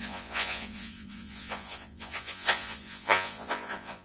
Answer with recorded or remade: remade